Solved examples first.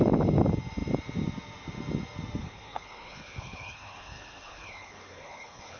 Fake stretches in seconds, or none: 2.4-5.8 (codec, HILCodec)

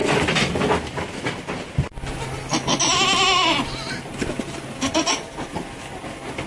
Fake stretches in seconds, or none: none

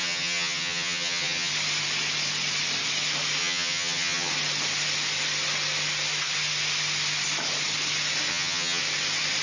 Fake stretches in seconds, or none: 0.0-1.5 (vocoder, HiFi-GAN); 3.4-4.3; 8.3-8.8

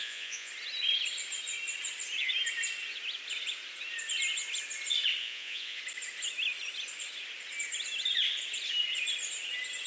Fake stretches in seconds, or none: 0.0-0.5 (vocoder, Vocos); 5.2-5.8

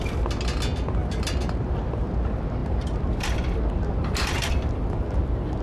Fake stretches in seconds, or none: none